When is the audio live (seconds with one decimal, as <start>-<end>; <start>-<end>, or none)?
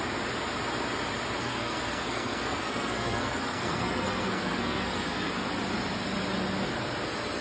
0.0-1.4; 5.3-7.4